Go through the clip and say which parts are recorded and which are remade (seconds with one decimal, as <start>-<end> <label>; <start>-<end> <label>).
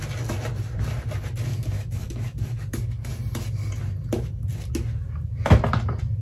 0.0-1.5 recorded; 1.5-3.1 remade; 3.1-6.2 recorded